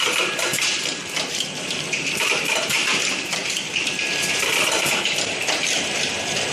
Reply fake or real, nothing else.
fake